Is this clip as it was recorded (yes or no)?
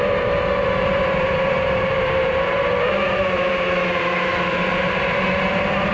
no